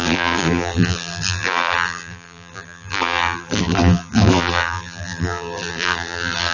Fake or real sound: fake